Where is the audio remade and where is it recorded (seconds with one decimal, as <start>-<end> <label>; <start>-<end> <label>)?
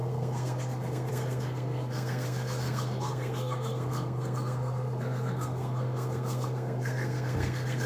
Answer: 0.0-7.9 remade